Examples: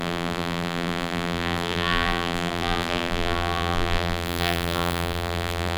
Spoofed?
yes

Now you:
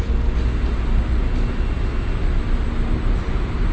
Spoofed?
no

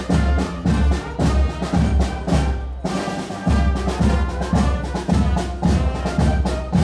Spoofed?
no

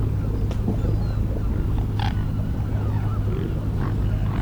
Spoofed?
no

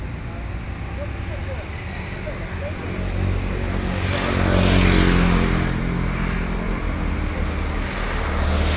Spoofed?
no